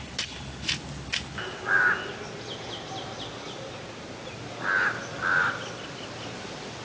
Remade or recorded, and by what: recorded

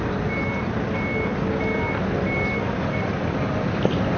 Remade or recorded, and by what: recorded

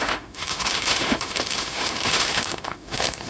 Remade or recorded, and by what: remade, autoencoder, DAC-VAE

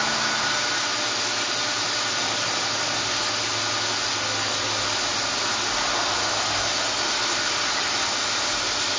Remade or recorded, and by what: recorded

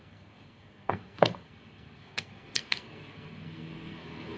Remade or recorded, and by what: remade, codec, SNAC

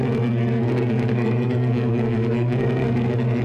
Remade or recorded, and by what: remade, codec, SNAC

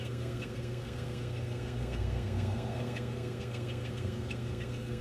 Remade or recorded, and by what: remade, codec, SNAC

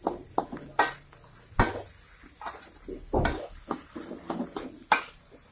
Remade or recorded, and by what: recorded